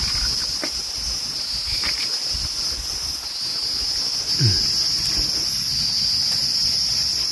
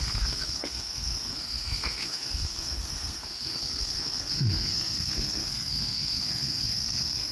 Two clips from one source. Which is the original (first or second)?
first